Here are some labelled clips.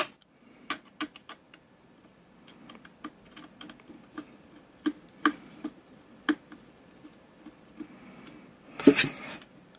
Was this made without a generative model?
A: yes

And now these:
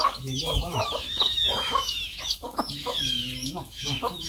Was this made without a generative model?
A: no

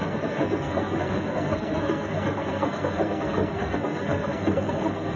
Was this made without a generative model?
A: no